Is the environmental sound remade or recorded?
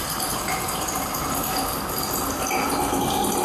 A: recorded